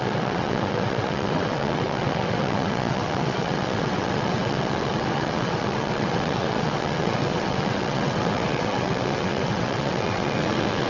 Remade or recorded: remade